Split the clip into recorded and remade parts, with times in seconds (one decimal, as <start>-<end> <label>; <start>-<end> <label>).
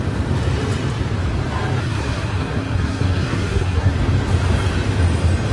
0.0-1.8 recorded; 1.8-3.9 remade; 3.9-5.5 recorded